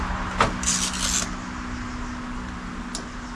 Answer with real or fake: real